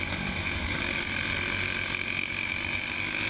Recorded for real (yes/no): yes